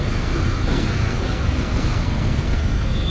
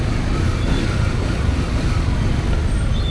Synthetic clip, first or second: first